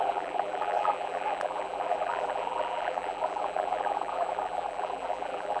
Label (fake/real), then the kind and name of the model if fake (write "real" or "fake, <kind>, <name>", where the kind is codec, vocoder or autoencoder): fake, vocoder, BigVGAN v2